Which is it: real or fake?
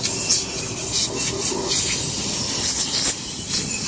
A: real